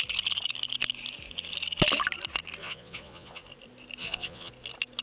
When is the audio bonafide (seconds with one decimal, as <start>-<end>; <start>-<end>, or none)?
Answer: 0.0-2.6; 3.4-4.0; 4.5-5.0